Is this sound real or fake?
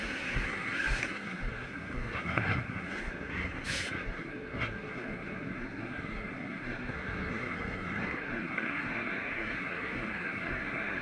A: fake